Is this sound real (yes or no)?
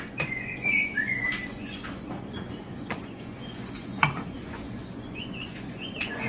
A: no